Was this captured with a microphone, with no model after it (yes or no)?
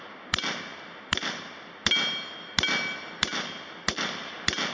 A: yes